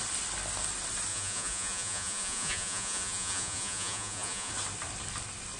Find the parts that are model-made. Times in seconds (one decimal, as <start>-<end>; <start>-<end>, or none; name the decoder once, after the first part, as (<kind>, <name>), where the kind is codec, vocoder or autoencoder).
1.1-4.5 (vocoder, Vocos)